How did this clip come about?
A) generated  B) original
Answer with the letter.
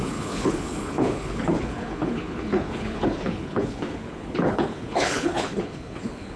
A